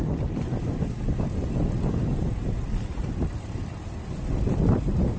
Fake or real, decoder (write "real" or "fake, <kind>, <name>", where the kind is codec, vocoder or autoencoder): real